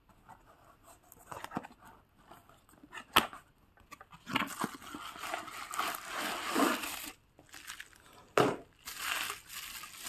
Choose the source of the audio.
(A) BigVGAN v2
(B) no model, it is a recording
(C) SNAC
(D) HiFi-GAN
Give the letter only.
B